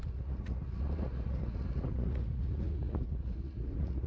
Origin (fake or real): fake